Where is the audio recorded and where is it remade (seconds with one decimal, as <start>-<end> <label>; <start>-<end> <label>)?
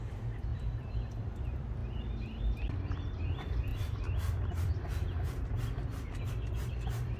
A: 0.0-1.8 remade; 1.8-2.4 recorded; 2.4-7.2 remade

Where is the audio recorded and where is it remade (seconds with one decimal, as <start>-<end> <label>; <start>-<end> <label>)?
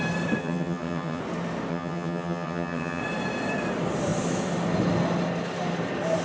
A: 0.0-0.4 recorded; 0.4-1.2 remade; 1.2-1.7 recorded; 1.7-3.0 remade; 3.0-6.2 recorded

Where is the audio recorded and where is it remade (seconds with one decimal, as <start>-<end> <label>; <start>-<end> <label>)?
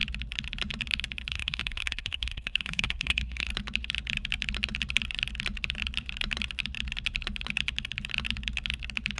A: 0.0-1.3 recorded; 1.3-3.5 remade; 3.5-9.2 recorded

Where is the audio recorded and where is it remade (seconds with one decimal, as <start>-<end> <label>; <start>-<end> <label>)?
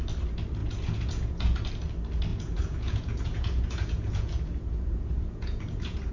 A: 0.0-0.6 recorded; 0.6-1.7 remade; 1.7-2.3 recorded; 2.3-6.1 remade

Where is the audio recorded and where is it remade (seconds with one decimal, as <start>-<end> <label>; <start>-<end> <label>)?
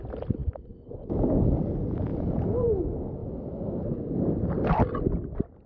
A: 0.0-2.1 recorded; 2.1-2.8 remade; 2.8-5.7 recorded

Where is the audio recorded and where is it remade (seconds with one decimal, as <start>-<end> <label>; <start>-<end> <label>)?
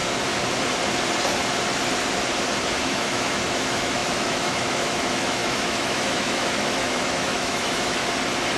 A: 0.0-2.8 recorded; 2.8-8.0 remade; 8.0-8.6 recorded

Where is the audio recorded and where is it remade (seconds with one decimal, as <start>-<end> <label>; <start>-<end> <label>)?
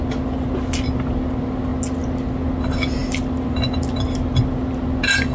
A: 0.0-5.3 recorded